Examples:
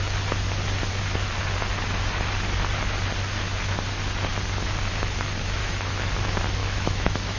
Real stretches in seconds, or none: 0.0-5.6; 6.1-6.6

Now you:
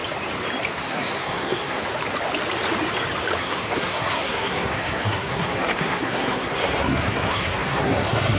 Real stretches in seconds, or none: 0.0-0.8; 1.8-3.4